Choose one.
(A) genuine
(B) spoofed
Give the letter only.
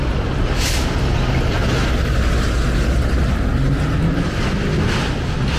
A